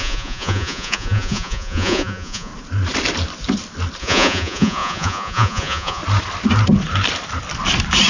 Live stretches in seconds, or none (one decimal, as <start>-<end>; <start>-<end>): 2.5-4.0; 6.0-8.1